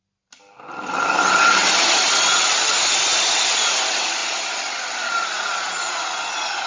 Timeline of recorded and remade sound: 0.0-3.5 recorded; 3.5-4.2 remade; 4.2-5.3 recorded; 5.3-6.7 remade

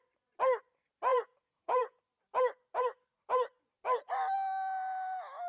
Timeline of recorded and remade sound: 0.0-1.1 recorded; 1.1-2.0 remade; 2.0-5.5 recorded

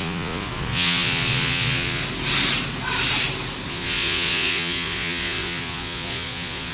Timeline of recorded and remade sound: 0.0-2.0 remade; 2.0-3.7 recorded; 3.7-6.7 remade

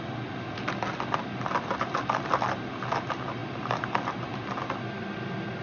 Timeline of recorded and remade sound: 0.0-5.6 recorded